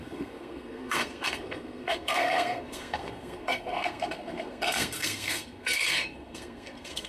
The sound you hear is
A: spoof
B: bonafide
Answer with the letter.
A